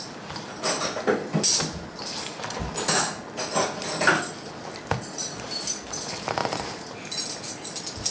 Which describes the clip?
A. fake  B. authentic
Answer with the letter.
B